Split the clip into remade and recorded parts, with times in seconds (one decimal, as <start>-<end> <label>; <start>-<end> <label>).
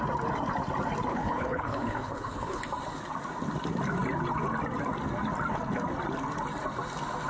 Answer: 0.0-1.1 recorded; 1.1-2.6 remade; 2.6-7.3 recorded